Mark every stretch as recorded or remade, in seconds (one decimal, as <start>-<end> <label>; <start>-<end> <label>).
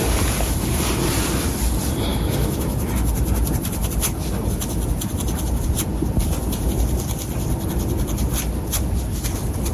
0.0-2.1 recorded; 2.1-2.9 remade; 2.9-9.7 recorded